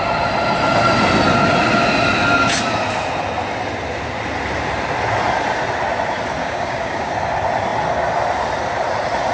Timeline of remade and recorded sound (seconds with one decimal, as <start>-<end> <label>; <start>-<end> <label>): 0.0-6.4 recorded; 6.4-7.1 remade; 7.1-9.3 recorded